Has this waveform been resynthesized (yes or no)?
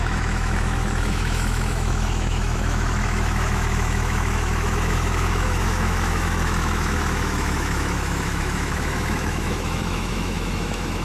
yes